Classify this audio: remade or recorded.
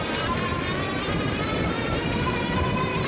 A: recorded